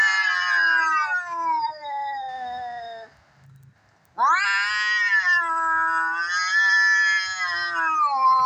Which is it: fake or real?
real